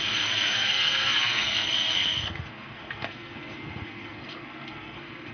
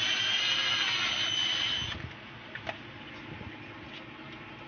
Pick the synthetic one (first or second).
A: first